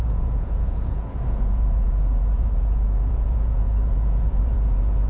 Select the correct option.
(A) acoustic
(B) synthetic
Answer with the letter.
B